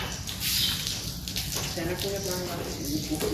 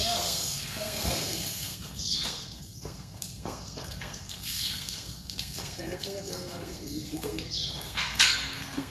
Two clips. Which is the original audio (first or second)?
first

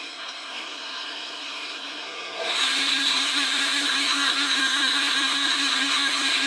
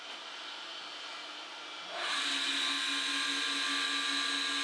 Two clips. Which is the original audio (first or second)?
second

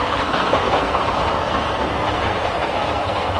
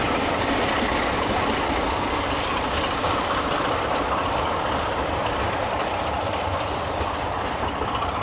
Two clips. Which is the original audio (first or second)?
second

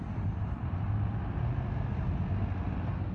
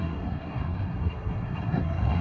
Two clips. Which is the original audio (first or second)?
first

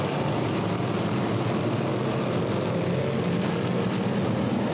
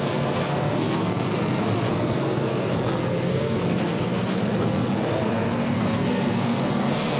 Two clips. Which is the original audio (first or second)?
first